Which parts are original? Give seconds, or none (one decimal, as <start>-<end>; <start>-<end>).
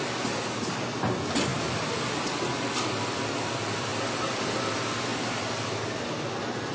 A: 0.0-1.5; 3.5-3.9; 4.4-6.7